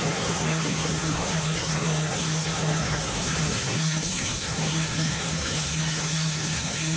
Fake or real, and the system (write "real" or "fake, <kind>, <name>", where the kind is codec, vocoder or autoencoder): fake, codec, SNAC